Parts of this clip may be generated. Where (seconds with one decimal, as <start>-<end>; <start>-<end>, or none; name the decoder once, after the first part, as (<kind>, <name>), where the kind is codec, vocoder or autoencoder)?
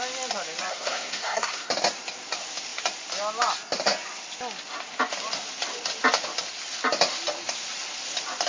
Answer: 0.7-1.7 (codec, SNAC)